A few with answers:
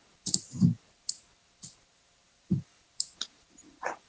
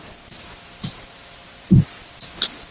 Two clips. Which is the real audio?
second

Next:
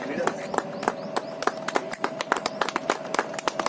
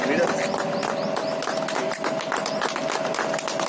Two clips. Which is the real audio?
second